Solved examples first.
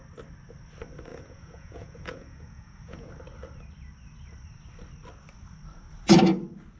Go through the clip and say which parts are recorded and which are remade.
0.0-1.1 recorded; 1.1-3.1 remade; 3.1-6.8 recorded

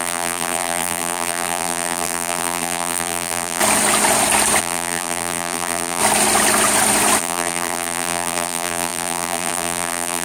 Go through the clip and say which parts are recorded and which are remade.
0.0-3.6 remade; 3.6-4.6 recorded; 4.6-6.0 remade; 6.0-7.2 recorded; 7.2-10.2 remade

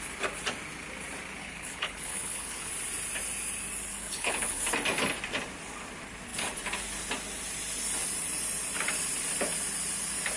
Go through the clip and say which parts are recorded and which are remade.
0.0-1.4 recorded; 1.4-2.7 remade; 2.7-3.9 recorded; 3.9-4.6 remade; 4.6-10.4 recorded

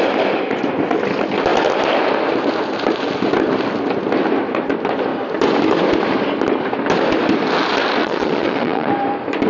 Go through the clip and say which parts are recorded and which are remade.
0.0-8.0 recorded; 8.0-8.9 remade; 8.9-9.5 recorded

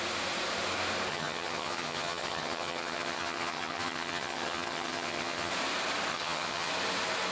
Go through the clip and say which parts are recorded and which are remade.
0.0-1.1 recorded; 1.1-5.5 remade; 5.5-6.1 recorded; 6.1-6.7 remade; 6.7-7.3 recorded